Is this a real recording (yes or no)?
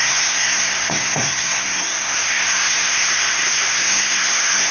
no